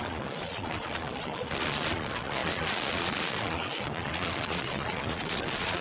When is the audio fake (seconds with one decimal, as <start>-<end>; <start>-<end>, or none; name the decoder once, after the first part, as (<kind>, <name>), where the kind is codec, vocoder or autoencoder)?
0.0-5.8 (vocoder, Vocos)